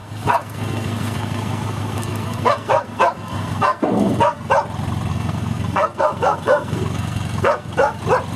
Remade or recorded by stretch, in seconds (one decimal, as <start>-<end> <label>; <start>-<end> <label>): 0.0-4.5 remade; 4.5-5.1 recorded; 5.1-8.0 remade; 8.0-8.4 recorded